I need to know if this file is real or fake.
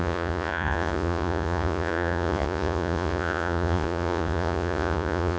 fake